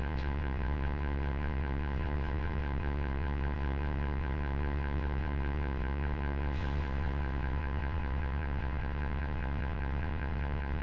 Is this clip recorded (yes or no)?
no